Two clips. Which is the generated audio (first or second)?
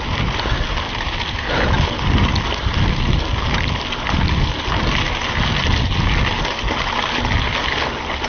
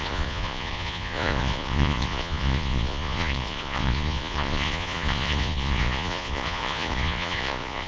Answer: second